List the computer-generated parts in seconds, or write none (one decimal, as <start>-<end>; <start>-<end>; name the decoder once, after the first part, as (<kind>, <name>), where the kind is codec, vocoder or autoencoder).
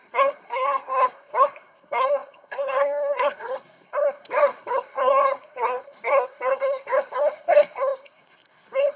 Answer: 0.0-9.0 (codec, SNAC)